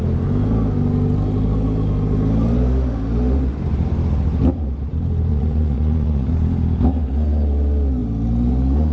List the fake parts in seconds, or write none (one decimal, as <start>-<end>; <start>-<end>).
5.3-6.3